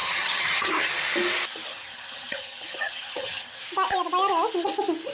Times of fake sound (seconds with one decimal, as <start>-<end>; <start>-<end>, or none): 0.0-0.9; 1.7-3.6